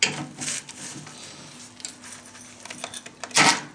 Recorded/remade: recorded